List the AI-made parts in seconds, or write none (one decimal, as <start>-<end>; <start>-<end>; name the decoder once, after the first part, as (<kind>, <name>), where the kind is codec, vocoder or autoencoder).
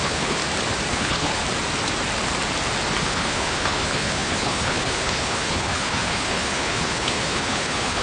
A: 0.0-0.4 (codec, HILCodec); 0.9-1.4; 3.0-8.0